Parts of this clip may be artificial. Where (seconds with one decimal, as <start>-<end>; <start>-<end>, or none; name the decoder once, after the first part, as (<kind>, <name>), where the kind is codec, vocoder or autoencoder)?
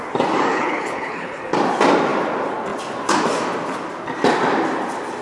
0.5-1.4 (codec, HILCodec)